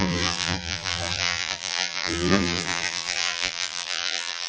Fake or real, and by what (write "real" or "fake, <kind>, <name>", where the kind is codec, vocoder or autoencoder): fake, vocoder, BigVGAN v2